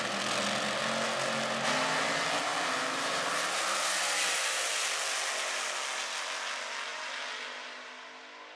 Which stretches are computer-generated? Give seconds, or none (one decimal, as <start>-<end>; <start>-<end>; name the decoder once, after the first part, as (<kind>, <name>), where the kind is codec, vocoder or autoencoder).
none